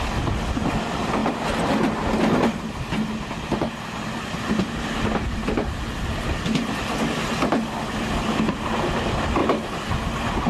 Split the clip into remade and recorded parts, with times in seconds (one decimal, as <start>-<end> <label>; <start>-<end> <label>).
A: 0.0-10.5 recorded

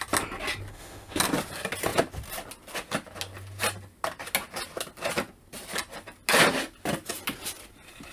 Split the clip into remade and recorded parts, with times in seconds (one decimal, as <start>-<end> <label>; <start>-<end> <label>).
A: 0.0-0.7 recorded; 0.7-1.2 remade; 1.2-8.1 recorded